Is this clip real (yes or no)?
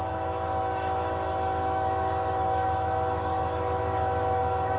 no